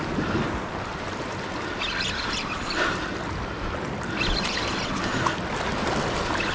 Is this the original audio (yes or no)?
yes